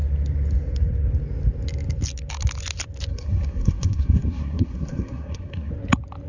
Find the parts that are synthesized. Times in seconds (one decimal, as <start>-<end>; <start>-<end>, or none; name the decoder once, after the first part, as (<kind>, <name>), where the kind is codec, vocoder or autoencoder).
3.1-5.7 (codec, SNAC)